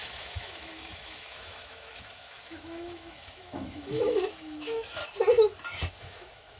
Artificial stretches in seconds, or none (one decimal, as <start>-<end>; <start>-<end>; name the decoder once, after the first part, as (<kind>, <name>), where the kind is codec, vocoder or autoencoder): 0.0-5.0 (autoencoder, DAC-VAE); 5.9-6.6